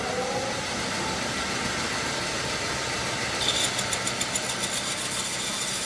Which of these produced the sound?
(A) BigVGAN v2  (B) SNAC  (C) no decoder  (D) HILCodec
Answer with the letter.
C